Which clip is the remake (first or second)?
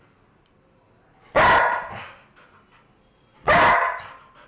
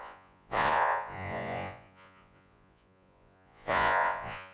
second